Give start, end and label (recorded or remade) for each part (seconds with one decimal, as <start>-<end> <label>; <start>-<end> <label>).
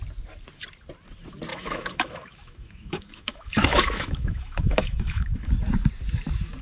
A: 0.0-1.5 recorded; 1.5-5.5 remade; 5.5-6.6 recorded